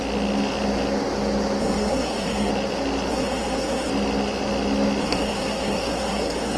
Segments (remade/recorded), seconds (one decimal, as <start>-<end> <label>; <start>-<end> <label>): 0.0-1.6 recorded; 1.6-2.5 remade; 2.5-3.1 recorded; 3.1-3.9 remade; 3.9-5.0 recorded; 5.0-6.6 remade